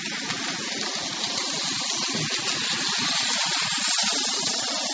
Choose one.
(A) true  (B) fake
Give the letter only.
A